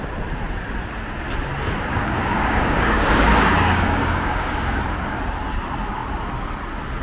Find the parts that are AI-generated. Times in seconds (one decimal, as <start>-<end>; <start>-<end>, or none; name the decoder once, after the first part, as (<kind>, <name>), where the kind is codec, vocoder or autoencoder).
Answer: 1.9-4.8 (codec, DAC)